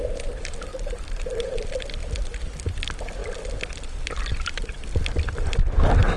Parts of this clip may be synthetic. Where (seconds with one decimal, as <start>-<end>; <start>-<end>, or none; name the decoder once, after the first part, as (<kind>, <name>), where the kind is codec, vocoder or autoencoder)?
0.7-1.6 (vocoder, BigVGAN v2)